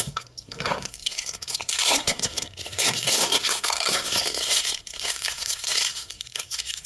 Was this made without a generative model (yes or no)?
no